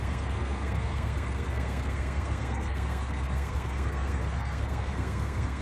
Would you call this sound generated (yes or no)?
yes